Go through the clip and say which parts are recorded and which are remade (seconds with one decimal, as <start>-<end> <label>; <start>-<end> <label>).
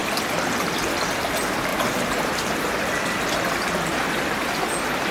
0.0-5.1 remade